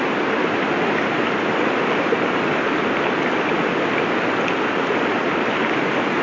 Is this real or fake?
real